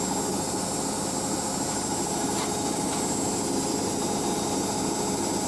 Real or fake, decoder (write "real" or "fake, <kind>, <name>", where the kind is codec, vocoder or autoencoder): real